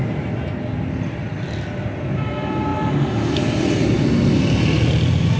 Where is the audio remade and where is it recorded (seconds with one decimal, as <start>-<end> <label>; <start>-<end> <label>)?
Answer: 0.0-5.4 recorded